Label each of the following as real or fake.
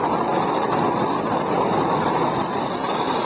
real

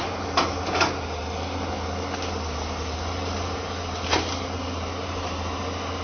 real